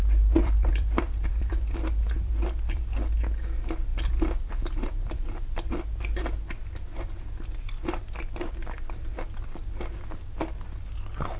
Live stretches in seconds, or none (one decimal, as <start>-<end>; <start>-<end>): 2.8-3.9; 5.7-11.4